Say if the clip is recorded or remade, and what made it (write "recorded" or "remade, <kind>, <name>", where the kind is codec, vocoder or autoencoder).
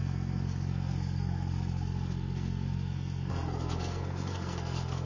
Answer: remade, codec, SNAC